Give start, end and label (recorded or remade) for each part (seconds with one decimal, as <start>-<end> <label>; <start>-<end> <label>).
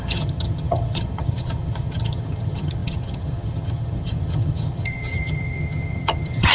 0.0-6.5 remade